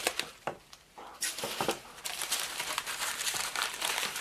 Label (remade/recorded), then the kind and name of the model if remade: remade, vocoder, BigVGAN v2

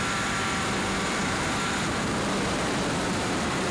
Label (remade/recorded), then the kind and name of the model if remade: remade, vocoder, BigVGAN v2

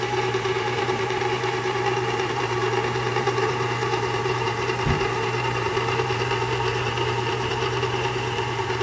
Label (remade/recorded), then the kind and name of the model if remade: remade, vocoder, BigVGAN v2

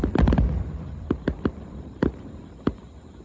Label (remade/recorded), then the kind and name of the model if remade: remade, vocoder, BigVGAN v2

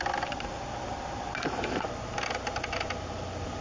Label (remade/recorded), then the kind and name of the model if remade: recorded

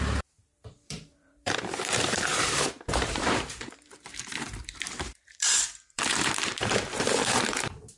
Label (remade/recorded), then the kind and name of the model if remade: remade, vocoder, BigVGAN v2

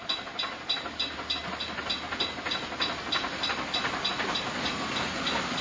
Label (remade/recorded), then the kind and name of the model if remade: recorded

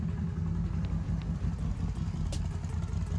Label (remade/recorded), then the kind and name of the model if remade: recorded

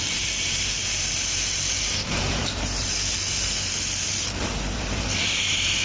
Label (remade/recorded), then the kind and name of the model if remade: remade, vocoder, BigVGAN v2